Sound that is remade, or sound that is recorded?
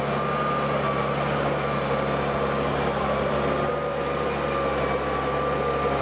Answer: recorded